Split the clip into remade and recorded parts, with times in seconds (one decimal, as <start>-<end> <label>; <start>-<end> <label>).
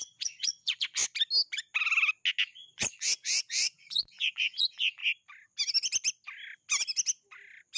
0.0-1.0 remade; 1.0-2.5 recorded; 2.5-5.0 remade; 5.0-7.8 recorded